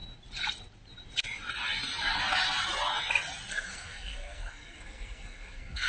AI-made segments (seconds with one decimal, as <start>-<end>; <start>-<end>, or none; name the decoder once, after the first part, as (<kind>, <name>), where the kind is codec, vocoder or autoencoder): 3.5-5.9 (codec, SNAC)